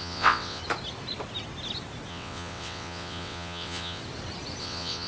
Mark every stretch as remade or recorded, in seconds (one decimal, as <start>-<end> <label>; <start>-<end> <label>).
0.0-0.6 remade; 0.6-2.1 recorded; 2.1-4.0 remade; 4.0-4.6 recorded; 4.6-5.1 remade